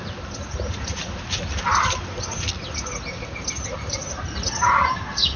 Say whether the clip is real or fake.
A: real